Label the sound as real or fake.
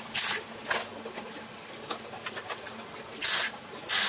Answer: real